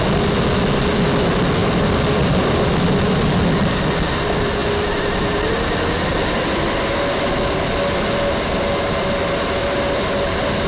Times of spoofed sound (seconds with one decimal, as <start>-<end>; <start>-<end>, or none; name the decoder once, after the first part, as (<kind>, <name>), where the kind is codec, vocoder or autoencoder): 1.6-2.7 (vocoder, BigVGAN v2); 9.6-10.7